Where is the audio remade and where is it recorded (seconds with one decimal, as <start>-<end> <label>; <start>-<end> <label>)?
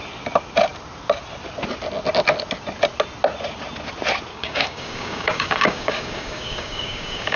0.0-4.3 recorded; 4.3-7.4 remade